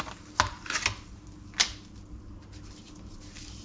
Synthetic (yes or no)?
no